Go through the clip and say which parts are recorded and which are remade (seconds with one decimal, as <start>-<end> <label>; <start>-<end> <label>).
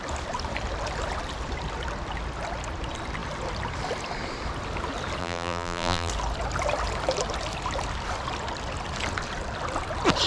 0.0-5.2 recorded; 5.2-6.1 remade; 6.1-10.3 recorded